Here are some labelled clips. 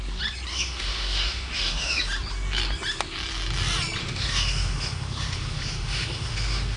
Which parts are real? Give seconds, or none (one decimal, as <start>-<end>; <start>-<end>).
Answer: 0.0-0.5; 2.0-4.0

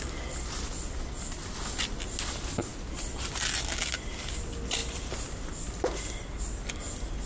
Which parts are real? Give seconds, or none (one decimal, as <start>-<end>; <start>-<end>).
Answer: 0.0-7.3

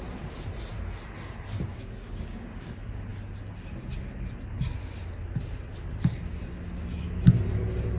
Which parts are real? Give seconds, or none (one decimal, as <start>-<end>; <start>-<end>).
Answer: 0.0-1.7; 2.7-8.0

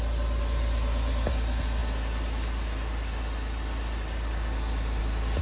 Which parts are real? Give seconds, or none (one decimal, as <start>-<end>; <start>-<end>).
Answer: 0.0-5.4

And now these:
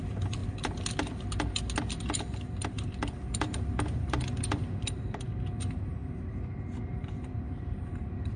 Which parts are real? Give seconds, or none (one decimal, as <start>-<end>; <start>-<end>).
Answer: 0.4-1.8

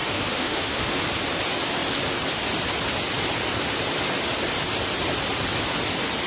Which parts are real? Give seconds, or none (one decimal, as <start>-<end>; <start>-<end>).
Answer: 1.0-6.3